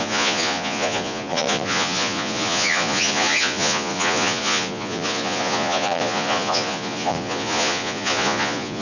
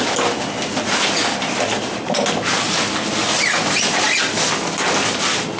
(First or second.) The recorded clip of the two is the second